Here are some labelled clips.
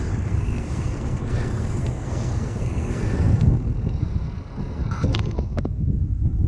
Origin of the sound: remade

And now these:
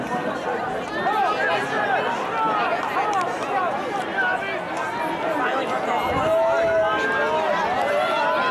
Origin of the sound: recorded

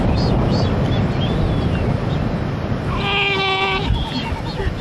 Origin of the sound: recorded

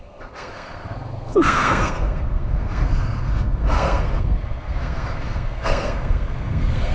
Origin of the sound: remade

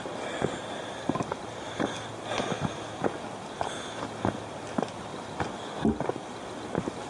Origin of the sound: recorded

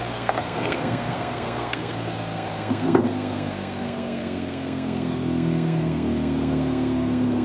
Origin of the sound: remade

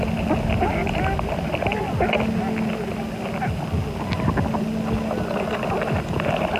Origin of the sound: recorded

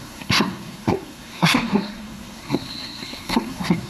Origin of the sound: remade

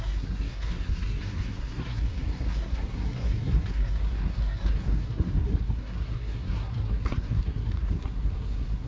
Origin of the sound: remade